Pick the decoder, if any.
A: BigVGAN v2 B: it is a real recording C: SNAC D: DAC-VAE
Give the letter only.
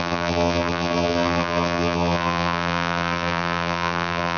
A